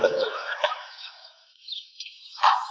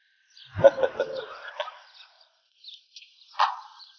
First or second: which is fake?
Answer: first